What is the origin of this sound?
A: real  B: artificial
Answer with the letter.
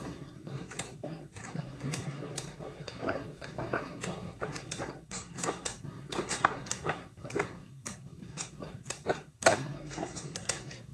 B